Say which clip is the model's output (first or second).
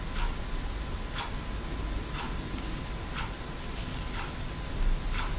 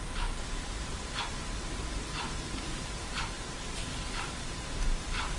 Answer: second